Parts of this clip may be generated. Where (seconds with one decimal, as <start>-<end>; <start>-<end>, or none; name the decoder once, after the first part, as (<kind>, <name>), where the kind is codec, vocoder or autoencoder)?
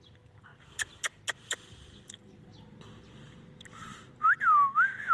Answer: none